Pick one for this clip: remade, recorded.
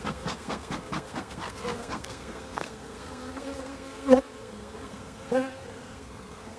remade